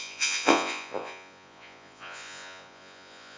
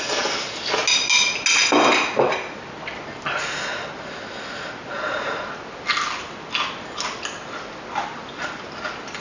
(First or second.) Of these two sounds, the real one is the second